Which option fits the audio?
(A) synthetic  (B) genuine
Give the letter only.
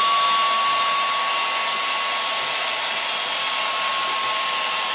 B